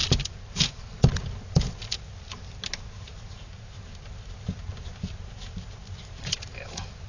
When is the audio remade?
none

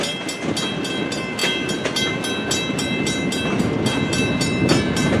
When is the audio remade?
none

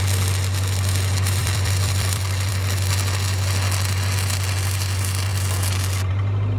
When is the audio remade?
1.4-2.5 (vocoder, BigVGAN v2)